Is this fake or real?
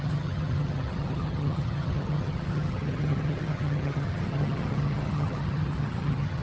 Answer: fake